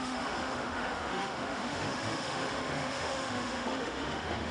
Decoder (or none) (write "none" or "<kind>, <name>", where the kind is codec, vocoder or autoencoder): autoencoder, DAC-VAE